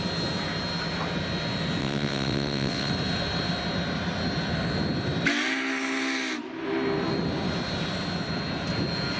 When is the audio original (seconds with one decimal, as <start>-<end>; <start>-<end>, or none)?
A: 0.0-1.8; 2.9-9.2